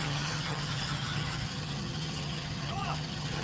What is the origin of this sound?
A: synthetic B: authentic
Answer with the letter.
A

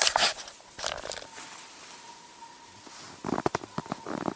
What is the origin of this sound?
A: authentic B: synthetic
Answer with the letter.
A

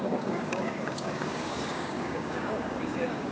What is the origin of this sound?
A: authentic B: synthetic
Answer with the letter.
B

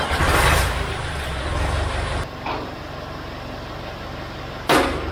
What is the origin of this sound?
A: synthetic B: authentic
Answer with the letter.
B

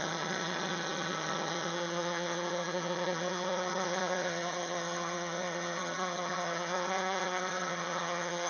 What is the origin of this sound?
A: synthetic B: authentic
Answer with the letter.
A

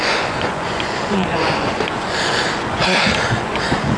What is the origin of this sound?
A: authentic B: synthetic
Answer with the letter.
B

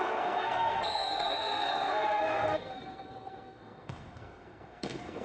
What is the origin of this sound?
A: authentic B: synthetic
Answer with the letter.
B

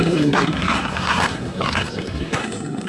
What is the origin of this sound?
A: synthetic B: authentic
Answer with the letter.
A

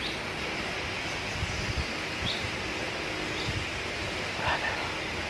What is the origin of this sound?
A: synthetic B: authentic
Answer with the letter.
B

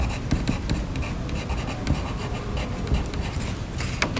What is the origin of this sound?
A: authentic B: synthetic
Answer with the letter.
A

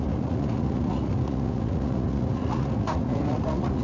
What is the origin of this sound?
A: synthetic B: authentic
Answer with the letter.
A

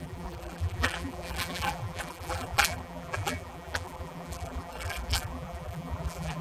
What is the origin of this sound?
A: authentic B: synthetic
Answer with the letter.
B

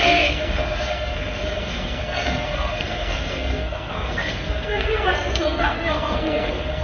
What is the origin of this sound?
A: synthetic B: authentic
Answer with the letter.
A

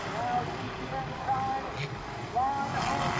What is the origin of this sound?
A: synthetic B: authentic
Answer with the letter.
B